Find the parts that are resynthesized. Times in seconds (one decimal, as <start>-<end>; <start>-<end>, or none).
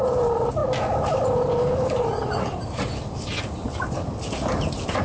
none